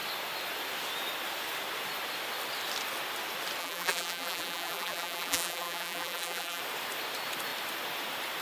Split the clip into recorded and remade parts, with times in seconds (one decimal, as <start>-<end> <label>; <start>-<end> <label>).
0.0-3.6 recorded; 3.6-6.6 remade; 6.6-8.4 recorded